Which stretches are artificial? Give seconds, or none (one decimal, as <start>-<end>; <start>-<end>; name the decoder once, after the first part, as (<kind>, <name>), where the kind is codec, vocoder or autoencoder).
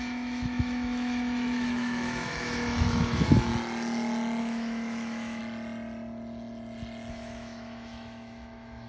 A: 0.0-3.5 (autoencoder, DAC-VAE); 4.4-5.4; 7.1-8.9